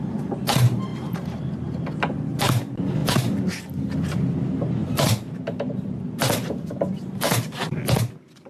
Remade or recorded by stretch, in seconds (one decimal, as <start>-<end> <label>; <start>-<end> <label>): 0.0-0.9 recorded; 0.9-1.4 remade; 1.4-4.8 recorded; 4.8-7.8 remade; 7.8-8.5 recorded